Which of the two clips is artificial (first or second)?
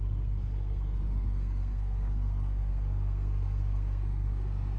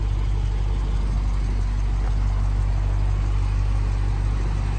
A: first